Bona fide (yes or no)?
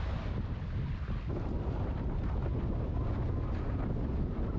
yes